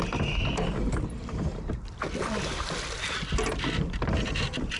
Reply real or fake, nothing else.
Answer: real